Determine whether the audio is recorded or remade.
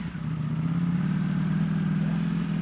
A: recorded